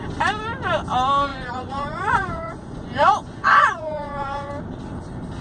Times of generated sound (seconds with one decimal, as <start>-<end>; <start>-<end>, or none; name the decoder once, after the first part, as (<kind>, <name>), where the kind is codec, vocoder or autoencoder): 1.3-4.5 (vocoder, Vocos)